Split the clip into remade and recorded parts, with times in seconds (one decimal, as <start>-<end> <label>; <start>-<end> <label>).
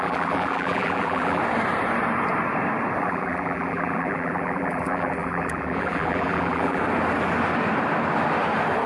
0.0-1.4 remade; 1.4-3.0 recorded; 3.0-6.8 remade; 6.8-8.9 recorded